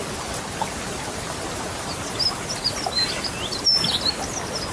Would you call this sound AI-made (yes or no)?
no